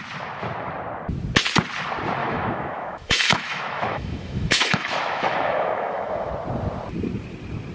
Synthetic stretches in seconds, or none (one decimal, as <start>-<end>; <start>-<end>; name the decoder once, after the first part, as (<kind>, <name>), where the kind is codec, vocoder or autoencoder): 2.2-6.3 (autoencoder, DAC-VAE)